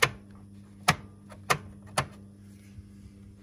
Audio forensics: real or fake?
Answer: real